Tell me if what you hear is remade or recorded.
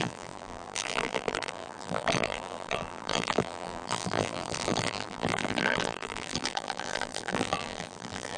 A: remade